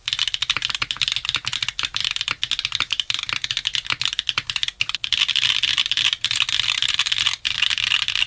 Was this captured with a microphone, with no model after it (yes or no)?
yes